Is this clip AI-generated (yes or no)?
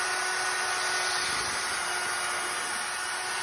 no